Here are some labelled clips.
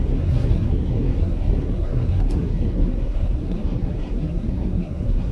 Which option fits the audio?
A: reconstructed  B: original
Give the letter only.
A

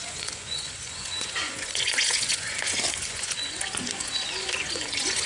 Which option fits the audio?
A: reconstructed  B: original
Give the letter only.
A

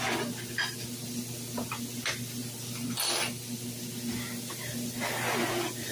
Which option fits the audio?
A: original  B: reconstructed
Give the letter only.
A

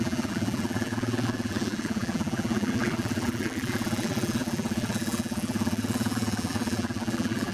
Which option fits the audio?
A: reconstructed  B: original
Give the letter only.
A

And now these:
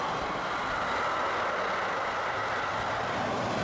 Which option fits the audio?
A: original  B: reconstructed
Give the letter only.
A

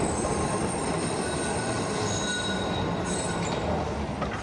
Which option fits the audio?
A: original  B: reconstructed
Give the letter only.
A